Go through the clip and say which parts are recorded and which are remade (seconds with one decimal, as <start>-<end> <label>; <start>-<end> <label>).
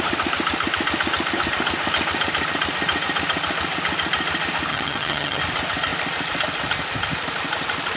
0.0-4.7 recorded; 4.7-5.4 remade; 5.4-8.0 recorded